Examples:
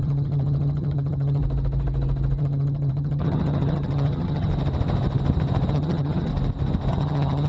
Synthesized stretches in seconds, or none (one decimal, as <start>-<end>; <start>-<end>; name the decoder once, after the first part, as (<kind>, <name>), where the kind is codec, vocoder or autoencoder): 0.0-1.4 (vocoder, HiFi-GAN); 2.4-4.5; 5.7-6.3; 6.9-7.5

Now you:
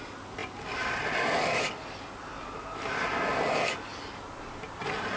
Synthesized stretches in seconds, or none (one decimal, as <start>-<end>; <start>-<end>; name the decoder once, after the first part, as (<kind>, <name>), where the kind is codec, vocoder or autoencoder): none

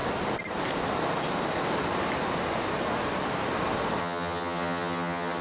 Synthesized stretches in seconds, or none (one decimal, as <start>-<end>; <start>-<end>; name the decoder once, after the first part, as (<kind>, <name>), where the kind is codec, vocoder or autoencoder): 4.0-5.4 (vocoder, HiFi-GAN)

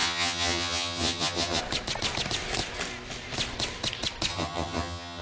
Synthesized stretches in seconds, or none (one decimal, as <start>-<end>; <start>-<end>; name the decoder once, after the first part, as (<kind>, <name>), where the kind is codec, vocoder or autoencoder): 0.0-1.6 (vocoder, HiFi-GAN); 4.3-5.2

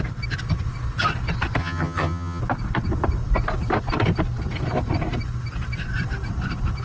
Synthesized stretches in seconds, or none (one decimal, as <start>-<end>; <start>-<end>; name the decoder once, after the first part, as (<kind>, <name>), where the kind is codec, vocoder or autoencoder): 1.6-2.4 (vocoder, HiFi-GAN)

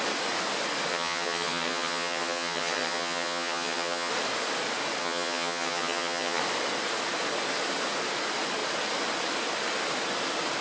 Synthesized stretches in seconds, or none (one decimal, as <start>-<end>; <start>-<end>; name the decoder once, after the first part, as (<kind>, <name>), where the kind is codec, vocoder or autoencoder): 0.9-4.1 (vocoder, HiFi-GAN); 5.0-6.4

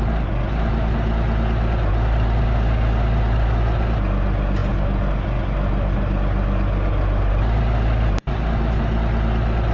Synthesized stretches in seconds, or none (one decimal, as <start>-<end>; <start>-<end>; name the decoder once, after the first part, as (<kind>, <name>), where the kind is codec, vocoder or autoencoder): none

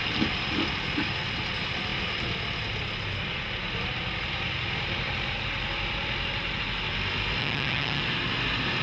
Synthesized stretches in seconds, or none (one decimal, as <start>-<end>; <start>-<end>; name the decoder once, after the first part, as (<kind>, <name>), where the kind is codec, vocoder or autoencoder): 7.4-8.0 (vocoder, HiFi-GAN)